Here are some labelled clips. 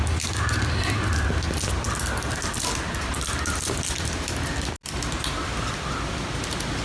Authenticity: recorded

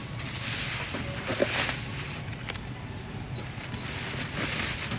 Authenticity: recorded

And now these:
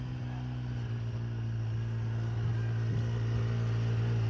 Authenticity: recorded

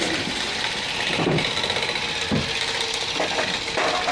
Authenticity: recorded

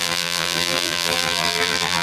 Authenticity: remade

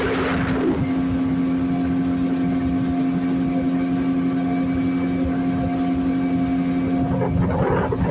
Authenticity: recorded